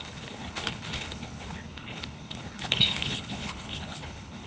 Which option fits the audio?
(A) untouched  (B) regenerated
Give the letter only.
B